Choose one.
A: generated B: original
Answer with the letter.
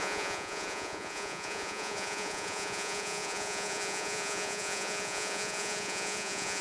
A